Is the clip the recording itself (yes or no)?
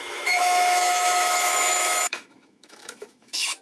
no